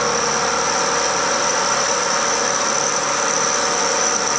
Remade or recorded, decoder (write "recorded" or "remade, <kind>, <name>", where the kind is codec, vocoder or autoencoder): recorded